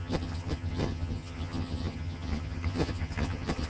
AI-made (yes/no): yes